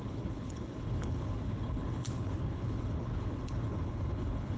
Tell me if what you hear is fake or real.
fake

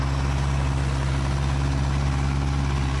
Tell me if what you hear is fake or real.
real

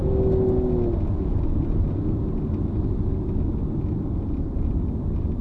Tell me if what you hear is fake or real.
real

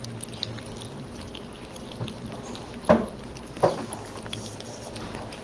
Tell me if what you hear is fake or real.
real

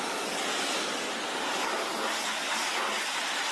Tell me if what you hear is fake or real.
real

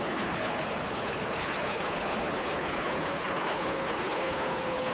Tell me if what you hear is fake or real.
fake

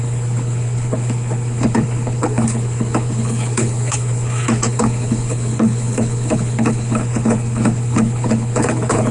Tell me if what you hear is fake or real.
fake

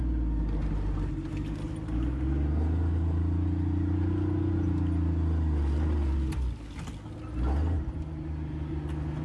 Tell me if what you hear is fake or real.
real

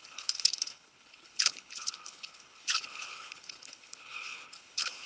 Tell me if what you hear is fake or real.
fake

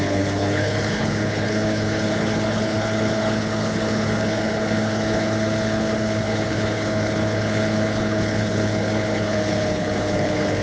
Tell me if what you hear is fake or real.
fake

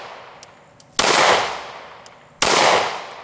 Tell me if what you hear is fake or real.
real